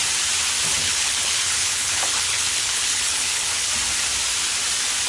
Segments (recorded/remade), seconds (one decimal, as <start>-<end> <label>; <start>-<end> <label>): 0.0-0.8 recorded; 0.8-3.7 remade; 3.7-5.1 recorded